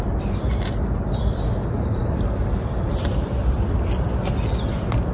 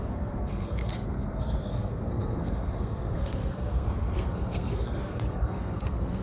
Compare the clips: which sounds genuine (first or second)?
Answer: first